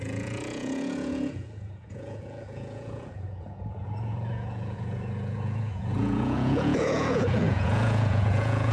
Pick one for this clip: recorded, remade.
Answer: remade